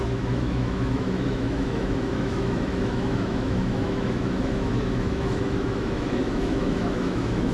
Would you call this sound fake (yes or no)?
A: yes